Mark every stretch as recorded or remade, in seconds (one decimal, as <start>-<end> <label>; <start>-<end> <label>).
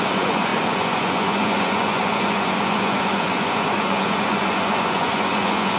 0.0-5.8 remade